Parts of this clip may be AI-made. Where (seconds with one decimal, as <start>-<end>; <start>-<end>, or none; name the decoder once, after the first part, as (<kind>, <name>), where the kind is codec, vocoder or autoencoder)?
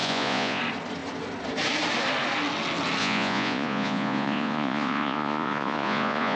0.0-0.6 (vocoder, Vocos); 3.0-6.4